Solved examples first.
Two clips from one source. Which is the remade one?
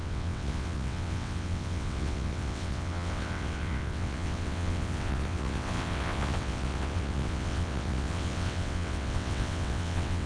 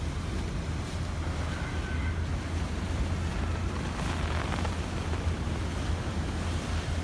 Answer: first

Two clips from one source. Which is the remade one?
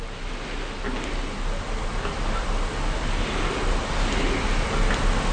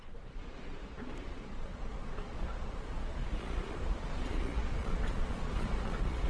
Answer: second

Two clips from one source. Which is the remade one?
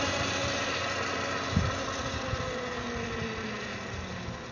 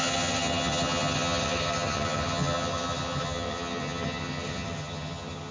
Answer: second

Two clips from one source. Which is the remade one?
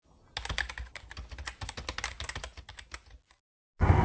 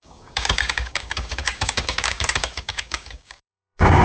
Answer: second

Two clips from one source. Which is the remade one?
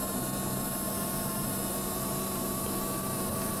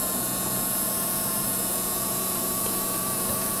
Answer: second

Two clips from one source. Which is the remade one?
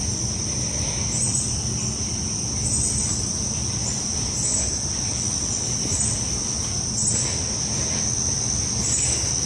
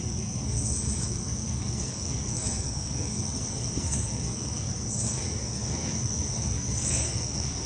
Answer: second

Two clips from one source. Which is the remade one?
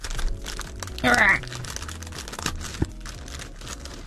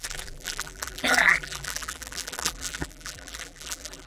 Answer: second